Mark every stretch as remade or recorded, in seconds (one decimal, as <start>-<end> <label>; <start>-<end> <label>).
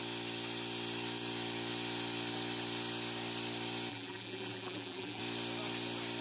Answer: 0.0-3.9 recorded; 3.9-5.2 remade; 5.2-6.2 recorded